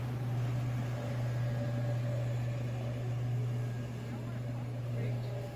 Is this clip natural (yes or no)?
yes